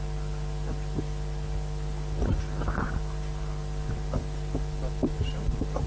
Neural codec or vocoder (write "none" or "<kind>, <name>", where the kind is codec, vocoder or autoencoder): none